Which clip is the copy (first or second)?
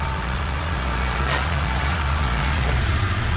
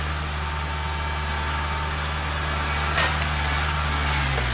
first